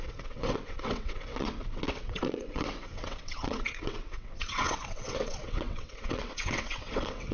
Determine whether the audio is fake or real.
fake